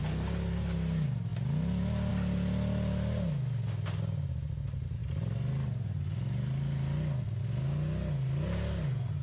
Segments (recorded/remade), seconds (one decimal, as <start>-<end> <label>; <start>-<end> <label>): 0.0-9.2 recorded